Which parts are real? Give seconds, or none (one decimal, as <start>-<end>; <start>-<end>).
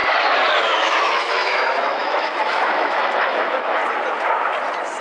0.0-0.6; 3.8-5.0